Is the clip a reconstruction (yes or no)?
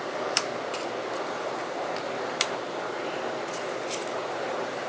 no